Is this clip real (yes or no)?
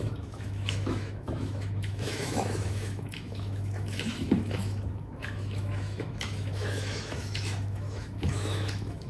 no